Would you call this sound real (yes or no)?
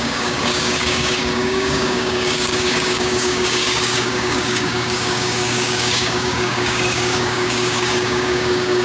no